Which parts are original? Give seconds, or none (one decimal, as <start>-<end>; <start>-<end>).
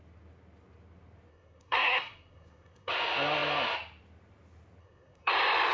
0.0-1.3; 2.9-4.8; 5.3-5.7